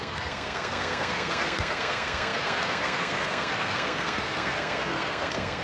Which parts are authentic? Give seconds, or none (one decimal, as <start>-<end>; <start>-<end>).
none